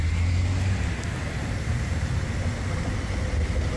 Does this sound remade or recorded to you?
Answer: recorded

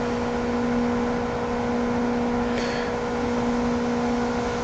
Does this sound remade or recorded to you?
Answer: recorded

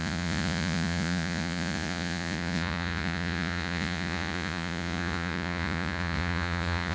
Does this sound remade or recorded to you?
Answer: remade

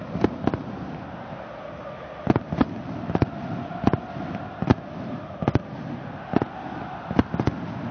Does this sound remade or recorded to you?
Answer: recorded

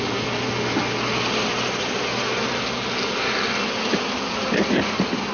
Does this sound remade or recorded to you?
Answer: recorded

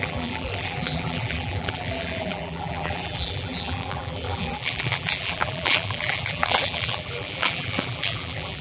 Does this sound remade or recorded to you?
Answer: remade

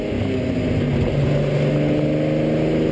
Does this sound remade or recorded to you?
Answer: recorded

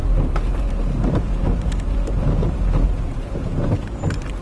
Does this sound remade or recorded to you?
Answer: remade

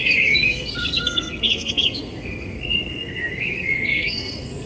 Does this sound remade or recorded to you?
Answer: remade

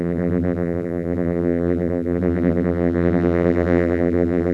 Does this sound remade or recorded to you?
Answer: remade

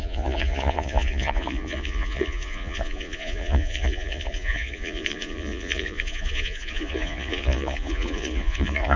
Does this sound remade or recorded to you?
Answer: remade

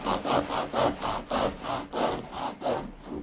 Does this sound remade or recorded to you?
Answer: recorded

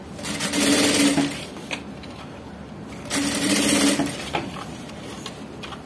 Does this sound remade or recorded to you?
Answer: recorded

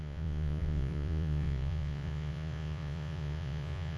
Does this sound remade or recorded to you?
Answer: remade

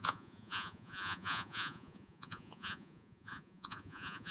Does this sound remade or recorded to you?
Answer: remade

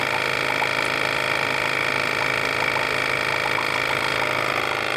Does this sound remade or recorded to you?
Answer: recorded